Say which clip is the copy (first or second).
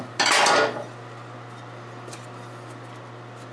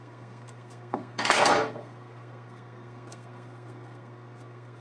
second